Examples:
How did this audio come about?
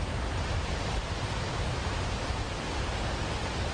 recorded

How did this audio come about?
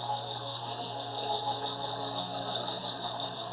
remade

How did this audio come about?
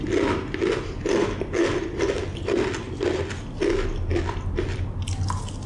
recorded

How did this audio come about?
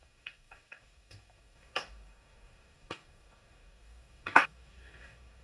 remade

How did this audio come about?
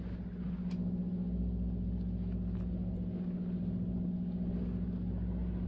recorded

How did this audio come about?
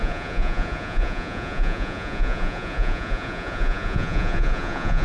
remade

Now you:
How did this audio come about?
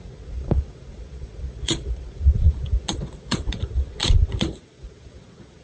remade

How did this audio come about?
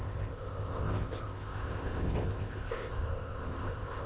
remade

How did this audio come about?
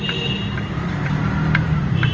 recorded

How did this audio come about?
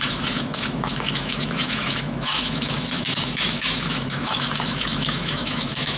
remade